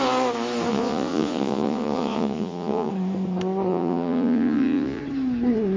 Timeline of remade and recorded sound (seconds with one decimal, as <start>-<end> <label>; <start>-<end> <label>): 0.0-0.7 recorded; 0.7-2.9 remade; 2.9-3.7 recorded; 3.7-5.0 remade; 5.0-5.8 recorded